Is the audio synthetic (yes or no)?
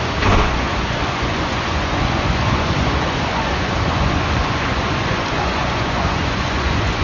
yes